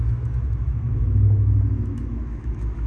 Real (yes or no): no